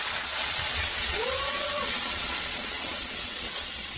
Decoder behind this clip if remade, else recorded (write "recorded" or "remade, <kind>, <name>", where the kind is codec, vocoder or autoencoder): remade, vocoder, Vocos